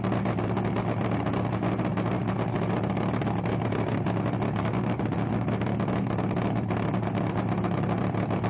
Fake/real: real